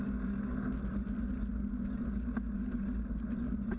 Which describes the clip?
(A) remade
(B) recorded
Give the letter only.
B